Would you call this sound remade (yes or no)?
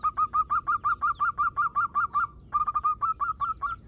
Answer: no